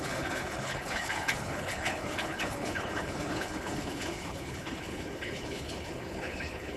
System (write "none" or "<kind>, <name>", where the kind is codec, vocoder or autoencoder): codec, HILCodec